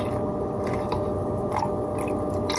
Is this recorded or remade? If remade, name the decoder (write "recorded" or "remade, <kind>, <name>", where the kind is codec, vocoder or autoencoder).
recorded